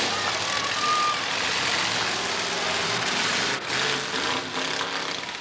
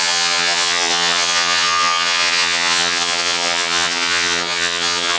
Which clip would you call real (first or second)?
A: first